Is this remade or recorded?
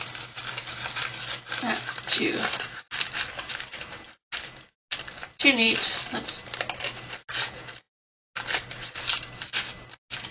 recorded